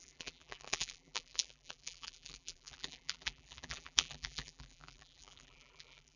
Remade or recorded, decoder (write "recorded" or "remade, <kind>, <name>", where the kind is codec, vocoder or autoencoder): remade, vocoder, BigVGAN v2